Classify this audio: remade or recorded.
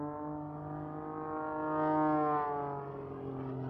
recorded